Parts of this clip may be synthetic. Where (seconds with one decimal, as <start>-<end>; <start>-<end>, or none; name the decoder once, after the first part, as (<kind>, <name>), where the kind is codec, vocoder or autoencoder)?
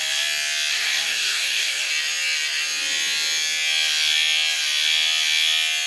0.7-1.9 (codec, DAC)